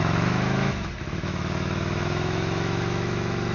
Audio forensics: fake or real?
fake